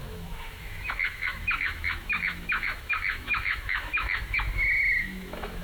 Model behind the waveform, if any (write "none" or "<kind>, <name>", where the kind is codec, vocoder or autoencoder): autoencoder, DAC-VAE